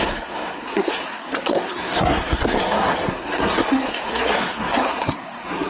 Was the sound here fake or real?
fake